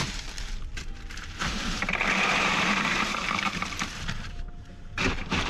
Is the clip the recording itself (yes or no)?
no